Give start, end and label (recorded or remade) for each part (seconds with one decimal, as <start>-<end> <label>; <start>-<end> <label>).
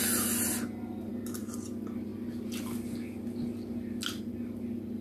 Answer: 0.0-5.0 recorded